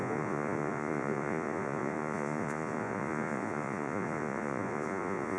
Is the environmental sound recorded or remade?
remade